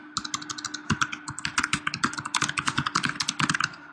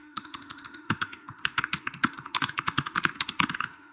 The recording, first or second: first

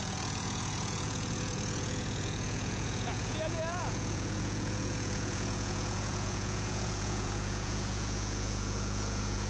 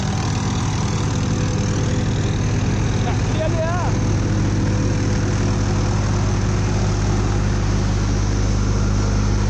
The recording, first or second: second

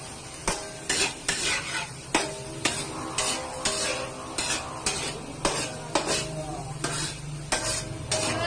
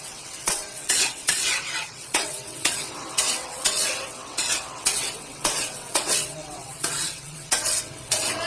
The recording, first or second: first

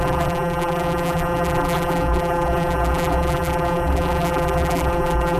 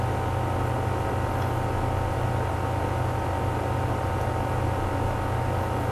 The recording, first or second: second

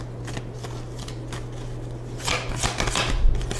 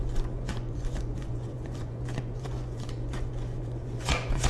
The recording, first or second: first